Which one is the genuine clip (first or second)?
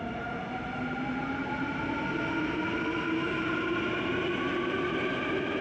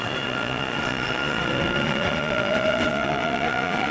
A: first